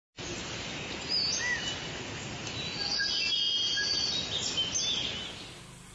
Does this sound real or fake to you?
real